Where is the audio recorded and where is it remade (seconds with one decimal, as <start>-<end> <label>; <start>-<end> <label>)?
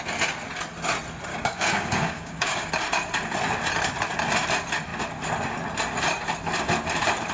0.0-1.3 recorded; 1.3-2.7 remade; 2.7-7.3 recorded